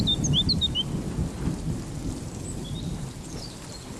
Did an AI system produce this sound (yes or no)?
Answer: no